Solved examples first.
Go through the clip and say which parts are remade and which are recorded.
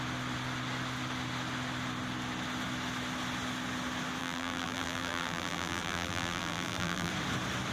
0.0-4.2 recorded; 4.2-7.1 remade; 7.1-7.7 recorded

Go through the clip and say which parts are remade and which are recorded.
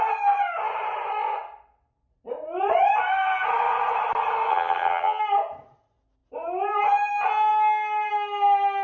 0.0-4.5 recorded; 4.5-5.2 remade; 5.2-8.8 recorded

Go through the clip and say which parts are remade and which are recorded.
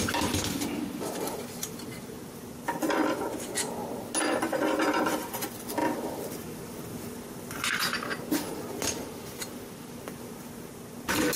0.0-11.4 recorded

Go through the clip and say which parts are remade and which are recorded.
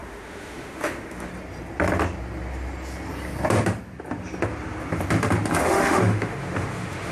0.0-1.3 remade; 1.3-5.6 recorded; 5.6-7.1 remade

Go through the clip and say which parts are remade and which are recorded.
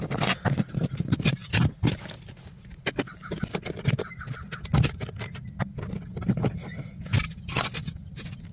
0.0-8.5 recorded